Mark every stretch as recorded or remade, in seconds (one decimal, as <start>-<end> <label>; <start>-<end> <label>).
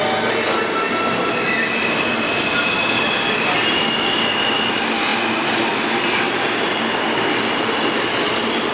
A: 0.0-8.7 recorded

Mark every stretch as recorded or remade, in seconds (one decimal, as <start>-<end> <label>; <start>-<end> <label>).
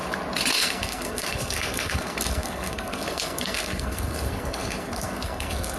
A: 0.0-0.5 recorded; 0.5-5.8 remade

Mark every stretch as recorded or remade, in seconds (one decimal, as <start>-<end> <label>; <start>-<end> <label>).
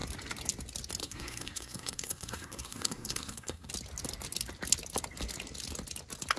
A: 0.0-1.0 recorded; 1.0-3.7 remade; 3.7-6.4 recorded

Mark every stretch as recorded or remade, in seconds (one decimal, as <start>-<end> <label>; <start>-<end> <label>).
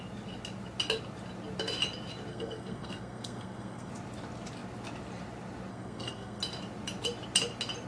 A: 0.0-2.3 recorded; 2.3-3.9 remade; 3.9-5.7 recorded; 5.7-6.4 remade; 6.4-7.9 recorded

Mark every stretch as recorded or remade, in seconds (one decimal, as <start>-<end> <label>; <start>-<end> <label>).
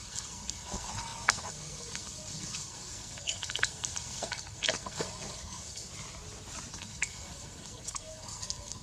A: 0.0-5.9 remade; 5.9-6.7 recorded; 6.7-8.8 remade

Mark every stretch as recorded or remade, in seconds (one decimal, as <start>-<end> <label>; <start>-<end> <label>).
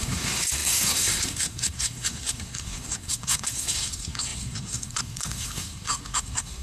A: 0.0-6.6 remade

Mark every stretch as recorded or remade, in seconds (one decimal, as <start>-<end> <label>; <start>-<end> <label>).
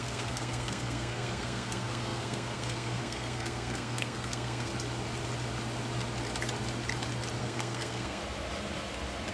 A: 0.0-4.7 remade; 4.7-7.4 recorded; 7.4-8.2 remade; 8.2-9.3 recorded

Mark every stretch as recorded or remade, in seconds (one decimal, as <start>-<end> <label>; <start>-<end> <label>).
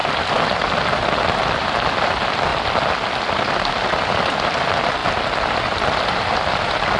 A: 0.0-7.0 recorded